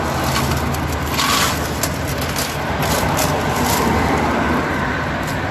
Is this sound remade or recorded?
recorded